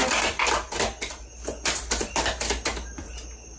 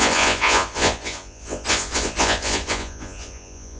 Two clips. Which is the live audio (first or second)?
first